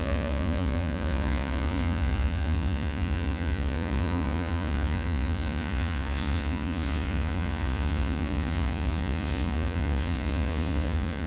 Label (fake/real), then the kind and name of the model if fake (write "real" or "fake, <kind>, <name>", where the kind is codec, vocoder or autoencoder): fake, vocoder, Vocos